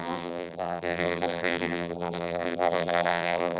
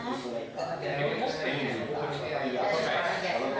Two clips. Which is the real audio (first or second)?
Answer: second